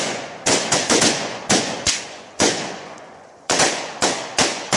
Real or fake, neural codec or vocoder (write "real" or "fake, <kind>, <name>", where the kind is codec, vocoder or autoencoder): fake, vocoder, Vocos